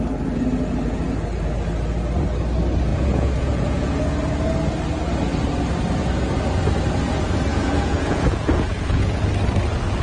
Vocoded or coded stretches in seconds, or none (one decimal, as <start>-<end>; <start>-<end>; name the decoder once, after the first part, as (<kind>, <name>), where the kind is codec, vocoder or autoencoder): 2.9-3.9 (vocoder, Vocos); 7.5-9.2